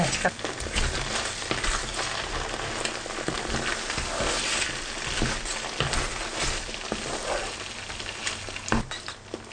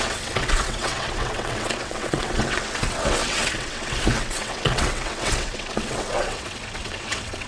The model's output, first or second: second